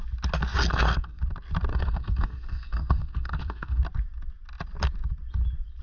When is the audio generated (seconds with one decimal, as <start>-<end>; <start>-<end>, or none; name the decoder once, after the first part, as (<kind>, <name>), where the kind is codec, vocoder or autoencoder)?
0.7-1.2 (codec, SNAC); 1.7-3.8

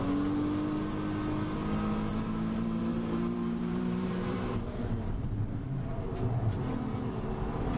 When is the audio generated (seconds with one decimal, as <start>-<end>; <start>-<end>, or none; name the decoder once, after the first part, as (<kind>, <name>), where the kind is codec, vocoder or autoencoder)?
2.1-6.8 (vocoder, BigVGAN v2)

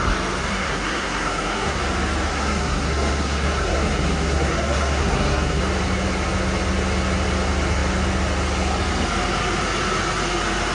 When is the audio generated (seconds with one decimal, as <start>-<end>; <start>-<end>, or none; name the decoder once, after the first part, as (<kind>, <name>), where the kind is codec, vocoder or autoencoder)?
0.4-1.8 (codec, SNAC); 2.3-5.6

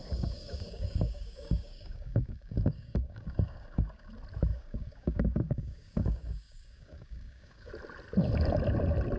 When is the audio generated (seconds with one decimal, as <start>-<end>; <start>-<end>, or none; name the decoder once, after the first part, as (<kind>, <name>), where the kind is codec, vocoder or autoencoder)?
0.0-4.1 (codec, DAC); 4.5-7.7

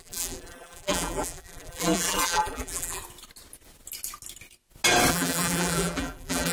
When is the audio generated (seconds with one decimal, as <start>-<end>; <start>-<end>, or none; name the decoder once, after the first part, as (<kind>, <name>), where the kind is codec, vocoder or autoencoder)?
0.0-3.0 (vocoder, BigVGAN v2); 5.1-6.5